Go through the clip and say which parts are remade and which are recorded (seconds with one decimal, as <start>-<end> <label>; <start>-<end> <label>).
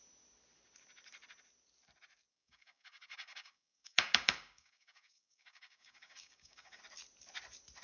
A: 0.0-2.3 recorded; 2.3-6.8 remade; 6.8-7.8 recorded